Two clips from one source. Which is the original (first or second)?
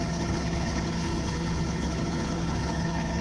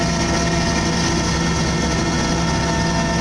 second